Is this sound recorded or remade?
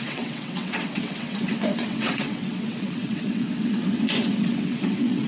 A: remade